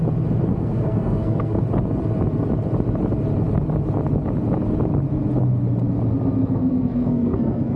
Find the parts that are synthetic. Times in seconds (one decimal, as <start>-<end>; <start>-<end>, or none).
0.5-1.6; 6.4-7.8